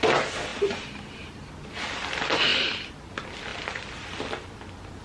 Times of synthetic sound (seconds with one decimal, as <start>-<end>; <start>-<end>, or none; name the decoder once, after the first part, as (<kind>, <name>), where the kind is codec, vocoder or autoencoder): 0.5-1.5 (vocoder, BigVGAN v2); 2.5-3.1; 3.5-4.5